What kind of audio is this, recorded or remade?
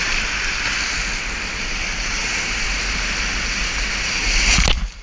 recorded